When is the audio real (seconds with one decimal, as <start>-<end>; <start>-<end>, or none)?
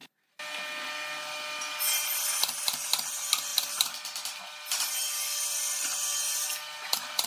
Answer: 0.0-7.3